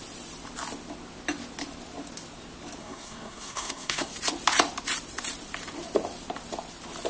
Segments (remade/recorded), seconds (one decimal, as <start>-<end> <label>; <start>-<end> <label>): 0.0-2.8 recorded; 2.8-4.1 remade; 4.1-7.1 recorded